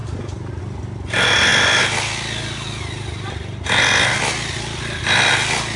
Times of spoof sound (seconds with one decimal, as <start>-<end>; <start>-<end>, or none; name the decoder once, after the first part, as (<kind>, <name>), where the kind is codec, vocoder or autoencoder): 0.0-0.6 (vocoder, BigVGAN v2)